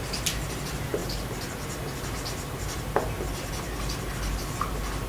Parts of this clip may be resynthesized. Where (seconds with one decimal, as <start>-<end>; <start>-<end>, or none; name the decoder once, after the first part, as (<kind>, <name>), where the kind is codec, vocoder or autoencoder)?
none